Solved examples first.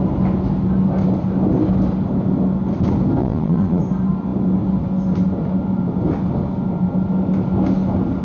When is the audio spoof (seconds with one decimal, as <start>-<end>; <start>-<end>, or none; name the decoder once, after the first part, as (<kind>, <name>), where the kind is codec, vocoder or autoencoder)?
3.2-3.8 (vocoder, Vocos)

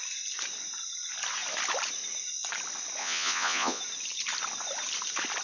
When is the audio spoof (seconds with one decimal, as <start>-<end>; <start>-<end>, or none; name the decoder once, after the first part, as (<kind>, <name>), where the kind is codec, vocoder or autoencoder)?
3.0-3.8 (vocoder, Vocos)

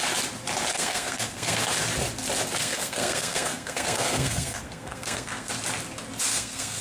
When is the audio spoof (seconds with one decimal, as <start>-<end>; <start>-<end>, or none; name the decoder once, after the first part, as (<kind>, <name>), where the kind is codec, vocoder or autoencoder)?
0.7-1.6 (codec, SNAC); 2.6-5.5; 6.3-6.8